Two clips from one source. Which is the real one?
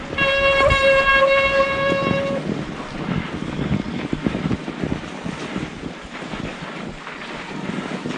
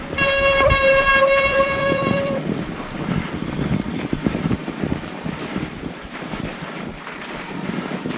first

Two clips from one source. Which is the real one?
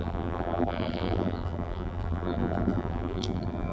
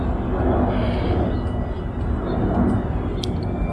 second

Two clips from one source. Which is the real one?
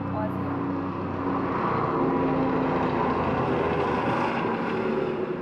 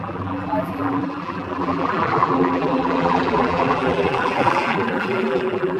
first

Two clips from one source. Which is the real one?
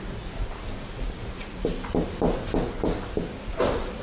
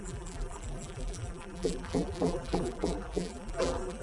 first